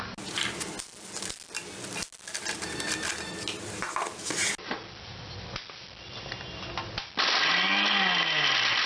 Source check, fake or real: real